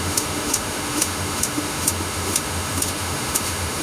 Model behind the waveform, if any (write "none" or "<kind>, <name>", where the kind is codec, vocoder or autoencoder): autoencoder, DAC-VAE